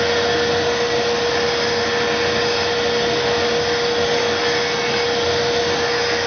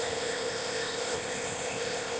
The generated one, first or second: second